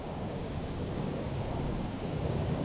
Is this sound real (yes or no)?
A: no